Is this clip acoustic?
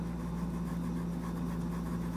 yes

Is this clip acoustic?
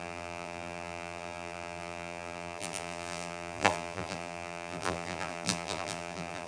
no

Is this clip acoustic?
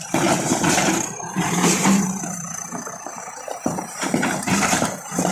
no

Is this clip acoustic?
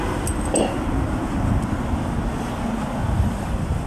yes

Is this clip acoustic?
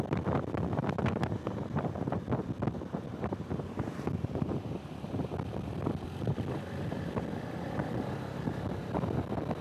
no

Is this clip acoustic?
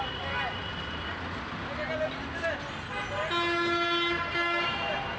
yes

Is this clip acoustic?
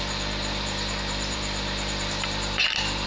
no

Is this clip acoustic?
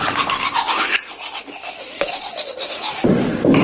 yes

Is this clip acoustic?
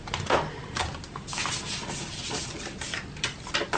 yes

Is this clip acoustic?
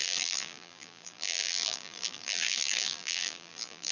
no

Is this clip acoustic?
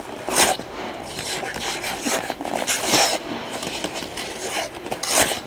yes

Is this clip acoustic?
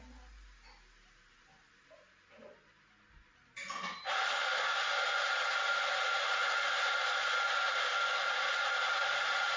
yes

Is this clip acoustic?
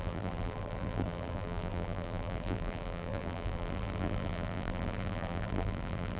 no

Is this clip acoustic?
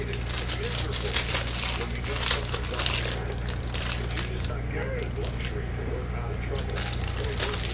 yes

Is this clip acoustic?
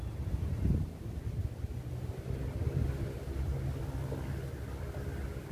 yes